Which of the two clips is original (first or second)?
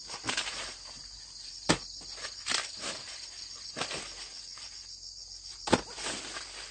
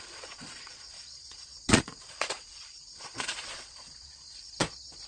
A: first